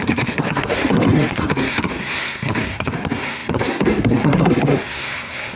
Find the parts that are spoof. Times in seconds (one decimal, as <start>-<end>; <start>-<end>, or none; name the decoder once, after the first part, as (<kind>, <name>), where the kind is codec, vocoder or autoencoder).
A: 0.0-5.6 (codec, SNAC)